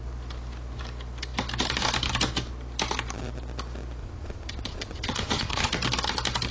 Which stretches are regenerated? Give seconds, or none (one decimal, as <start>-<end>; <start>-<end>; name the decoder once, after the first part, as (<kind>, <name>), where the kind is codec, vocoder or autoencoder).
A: 4.0-5.7 (vocoder, Vocos)